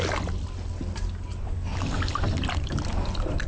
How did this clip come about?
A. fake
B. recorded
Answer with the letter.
B